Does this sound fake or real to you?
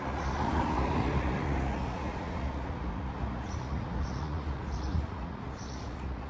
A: fake